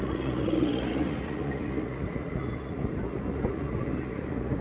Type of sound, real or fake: fake